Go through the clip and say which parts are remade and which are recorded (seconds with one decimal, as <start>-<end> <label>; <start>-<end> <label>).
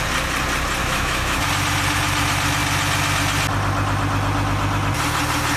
0.0-0.8 recorded; 0.8-1.5 remade; 1.5-5.6 recorded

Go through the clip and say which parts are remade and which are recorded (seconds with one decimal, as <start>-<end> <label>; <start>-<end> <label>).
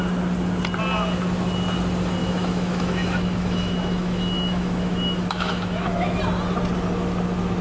0.0-2.2 recorded; 2.2-6.2 remade; 6.2-7.6 recorded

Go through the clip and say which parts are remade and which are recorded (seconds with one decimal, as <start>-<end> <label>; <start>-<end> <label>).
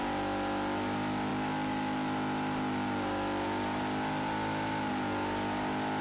0.0-6.0 recorded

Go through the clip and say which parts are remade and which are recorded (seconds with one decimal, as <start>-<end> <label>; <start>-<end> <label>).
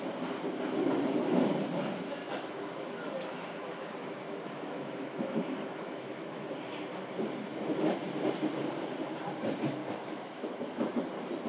0.0-2.2 recorded; 2.2-6.5 remade; 6.5-7.5 recorded; 7.5-8.0 remade; 8.0-9.8 recorded; 9.8-11.0 remade; 11.0-11.5 recorded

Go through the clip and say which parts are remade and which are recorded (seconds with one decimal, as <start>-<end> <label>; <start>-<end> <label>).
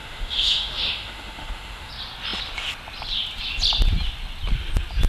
0.0-1.9 remade; 1.9-5.1 recorded